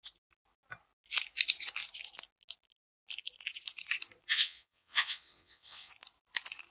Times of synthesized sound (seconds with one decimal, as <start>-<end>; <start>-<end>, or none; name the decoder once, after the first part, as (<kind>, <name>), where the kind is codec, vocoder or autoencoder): 4.3-5.9 (vocoder, WaveNeXt)